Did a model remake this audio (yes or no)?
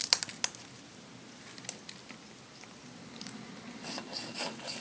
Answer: no